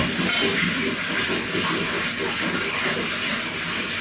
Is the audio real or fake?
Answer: real